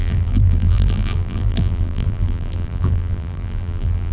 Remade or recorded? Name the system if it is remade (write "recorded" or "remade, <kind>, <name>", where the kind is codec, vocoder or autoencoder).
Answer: remade, vocoder, BigVGAN v2